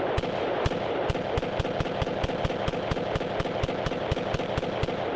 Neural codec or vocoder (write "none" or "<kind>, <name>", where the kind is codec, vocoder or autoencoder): none